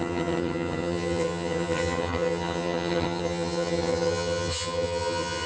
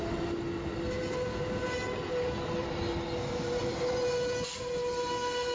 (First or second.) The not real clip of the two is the first